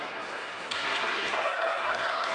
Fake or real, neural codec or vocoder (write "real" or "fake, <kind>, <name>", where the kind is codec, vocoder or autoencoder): fake, codec, SNAC